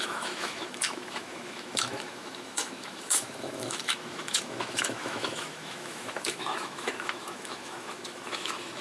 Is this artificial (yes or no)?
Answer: yes